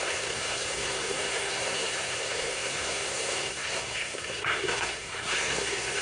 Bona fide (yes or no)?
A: no